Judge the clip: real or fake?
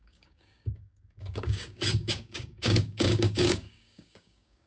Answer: fake